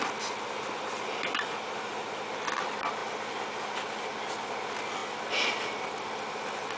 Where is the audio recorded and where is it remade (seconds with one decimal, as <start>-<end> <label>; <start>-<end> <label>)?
0.0-6.8 recorded